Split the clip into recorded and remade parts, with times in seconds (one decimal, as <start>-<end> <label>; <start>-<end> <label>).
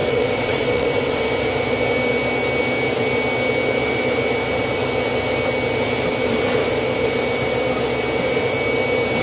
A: 0.0-1.2 remade; 1.2-9.2 recorded